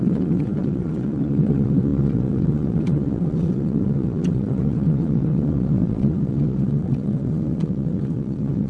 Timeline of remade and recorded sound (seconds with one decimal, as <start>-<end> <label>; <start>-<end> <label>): 0.0-8.7 remade